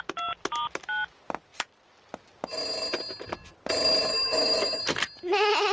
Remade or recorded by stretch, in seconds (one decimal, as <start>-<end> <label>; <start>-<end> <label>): 0.0-4.1 recorded; 4.1-4.8 remade; 4.8-5.7 recorded

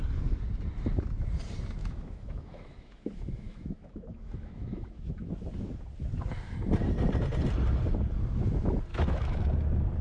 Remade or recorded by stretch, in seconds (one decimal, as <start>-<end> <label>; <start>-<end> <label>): 0.0-1.8 recorded; 1.8-5.3 remade; 5.3-8.9 recorded; 8.9-9.4 remade; 9.4-10.0 recorded

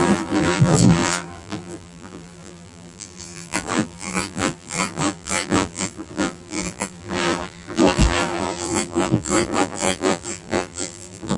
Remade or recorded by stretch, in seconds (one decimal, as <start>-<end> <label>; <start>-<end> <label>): 0.0-11.4 remade

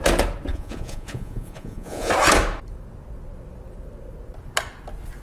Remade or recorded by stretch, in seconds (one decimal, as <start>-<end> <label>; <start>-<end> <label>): 0.0-0.5 recorded; 0.5-2.1 remade; 2.1-5.2 recorded

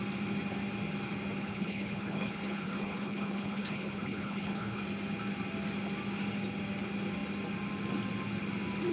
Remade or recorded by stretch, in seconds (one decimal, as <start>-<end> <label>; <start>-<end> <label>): 0.0-1.4 recorded; 1.4-4.8 remade; 4.8-8.9 recorded

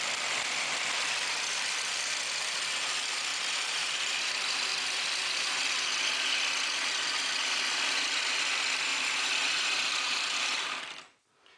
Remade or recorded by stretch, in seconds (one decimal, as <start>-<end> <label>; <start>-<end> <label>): 0.0-3.3 recorded; 3.3-3.9 remade; 3.9-8.9 recorded; 8.9-10.4 remade; 10.4-11.6 recorded